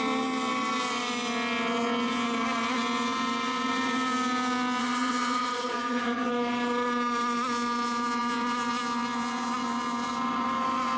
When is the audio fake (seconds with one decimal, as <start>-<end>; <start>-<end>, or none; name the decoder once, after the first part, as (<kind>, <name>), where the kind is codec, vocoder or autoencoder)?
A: 4.8-6.3 (vocoder, HiFi-GAN)